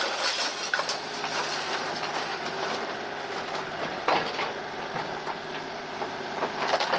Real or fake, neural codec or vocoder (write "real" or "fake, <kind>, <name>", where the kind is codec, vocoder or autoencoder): real